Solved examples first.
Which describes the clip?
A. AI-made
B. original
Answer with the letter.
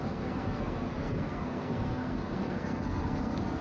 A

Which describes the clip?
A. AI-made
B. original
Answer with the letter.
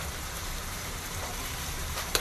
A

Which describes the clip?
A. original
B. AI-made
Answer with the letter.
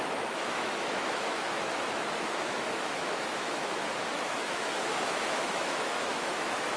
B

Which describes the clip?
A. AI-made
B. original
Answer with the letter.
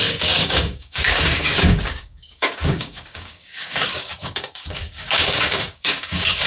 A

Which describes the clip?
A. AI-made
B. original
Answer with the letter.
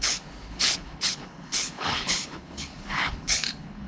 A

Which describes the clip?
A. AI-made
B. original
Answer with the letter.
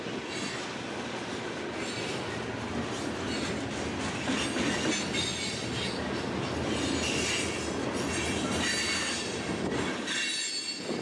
B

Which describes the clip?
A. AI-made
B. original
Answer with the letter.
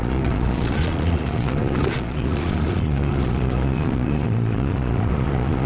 A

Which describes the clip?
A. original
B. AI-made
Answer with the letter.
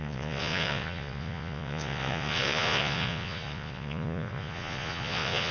B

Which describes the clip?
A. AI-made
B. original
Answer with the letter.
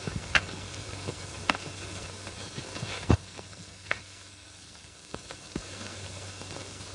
A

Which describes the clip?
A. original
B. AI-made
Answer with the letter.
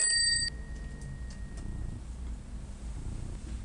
A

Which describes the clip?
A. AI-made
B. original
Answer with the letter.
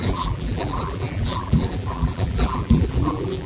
A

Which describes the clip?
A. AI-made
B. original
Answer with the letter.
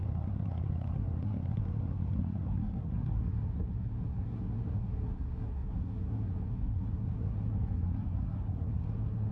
A